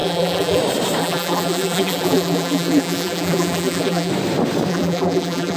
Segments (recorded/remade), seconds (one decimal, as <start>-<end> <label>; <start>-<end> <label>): 0.0-0.6 remade; 0.6-1.0 recorded; 1.0-4.1 remade; 4.1-4.7 recorded; 4.7-5.6 remade

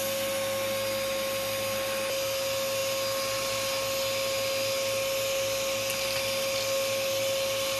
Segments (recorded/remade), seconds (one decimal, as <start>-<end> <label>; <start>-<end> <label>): 0.0-7.8 recorded